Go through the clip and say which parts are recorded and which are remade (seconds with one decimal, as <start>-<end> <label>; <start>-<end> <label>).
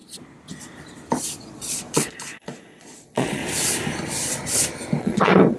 0.0-1.4 recorded; 1.4-3.4 remade; 3.4-5.0 recorded; 5.0-5.6 remade